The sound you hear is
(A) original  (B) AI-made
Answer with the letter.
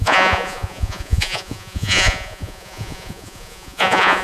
B